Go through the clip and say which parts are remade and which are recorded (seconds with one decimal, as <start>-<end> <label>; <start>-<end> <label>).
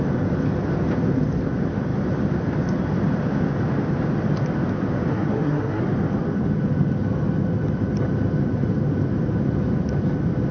0.0-5.1 recorded; 5.1-5.8 remade; 5.8-10.5 recorded